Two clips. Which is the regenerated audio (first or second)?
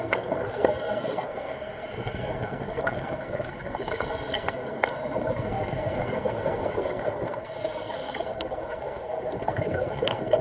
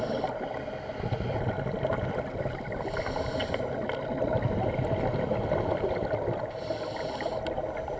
first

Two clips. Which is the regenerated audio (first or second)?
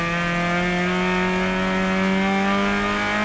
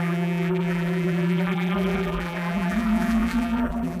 second